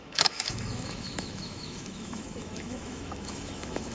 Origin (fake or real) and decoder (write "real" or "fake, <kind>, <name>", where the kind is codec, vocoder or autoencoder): fake, autoencoder, DAC-VAE